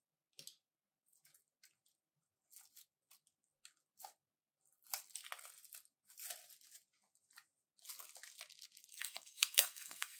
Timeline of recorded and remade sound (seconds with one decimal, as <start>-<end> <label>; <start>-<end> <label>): 0.0-8.9 recorded; 8.9-10.2 remade